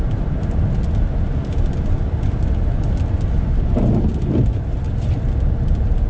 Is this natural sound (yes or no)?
yes